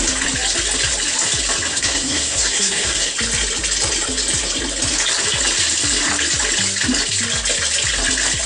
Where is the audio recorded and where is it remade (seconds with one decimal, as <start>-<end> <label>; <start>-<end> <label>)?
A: 0.0-1.7 recorded; 1.7-3.1 remade; 3.1-8.5 recorded